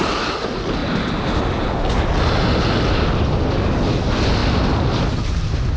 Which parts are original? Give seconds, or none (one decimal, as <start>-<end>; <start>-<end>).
0.0-5.8

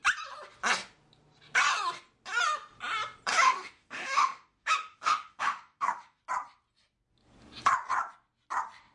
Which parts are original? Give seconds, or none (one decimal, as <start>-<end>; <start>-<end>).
0.0-3.3; 6.2-8.9

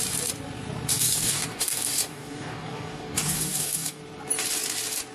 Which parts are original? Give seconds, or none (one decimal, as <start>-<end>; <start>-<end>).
0.0-0.9; 4.0-5.1